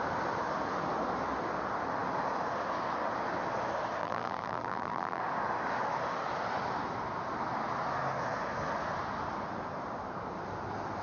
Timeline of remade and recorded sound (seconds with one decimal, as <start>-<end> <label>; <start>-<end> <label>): 0.0-4.0 recorded; 4.0-5.2 remade; 5.2-11.0 recorded